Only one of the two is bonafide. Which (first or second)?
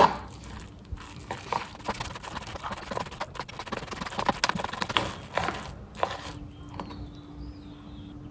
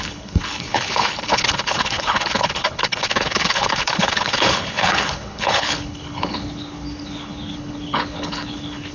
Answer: first